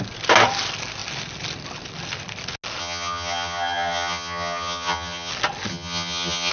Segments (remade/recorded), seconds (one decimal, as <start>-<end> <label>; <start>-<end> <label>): 0.0-2.8 recorded; 2.8-5.3 remade; 5.3-5.7 recorded; 5.7-6.5 remade